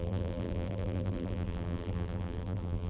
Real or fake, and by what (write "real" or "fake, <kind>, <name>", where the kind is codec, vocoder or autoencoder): fake, vocoder, BigVGAN v2